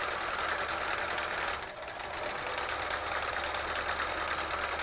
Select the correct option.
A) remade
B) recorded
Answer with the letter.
B